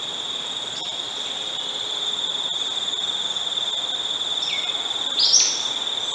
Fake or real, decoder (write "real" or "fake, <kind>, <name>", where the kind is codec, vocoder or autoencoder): real